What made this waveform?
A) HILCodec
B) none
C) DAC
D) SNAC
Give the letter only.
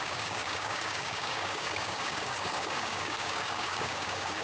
C